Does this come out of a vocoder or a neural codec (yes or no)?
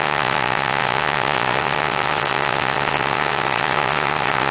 yes